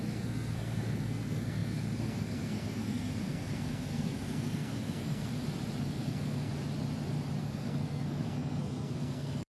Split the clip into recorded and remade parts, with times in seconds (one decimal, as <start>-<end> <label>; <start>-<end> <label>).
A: 0.0-5.3 remade; 5.3-5.8 recorded; 5.8-6.5 remade; 6.5-7.4 recorded; 7.4-9.5 remade